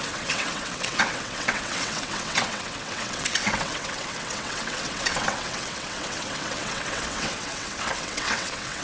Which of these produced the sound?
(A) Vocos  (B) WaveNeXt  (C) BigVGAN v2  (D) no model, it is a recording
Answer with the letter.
B